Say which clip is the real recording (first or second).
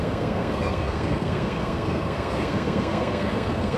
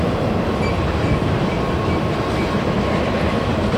second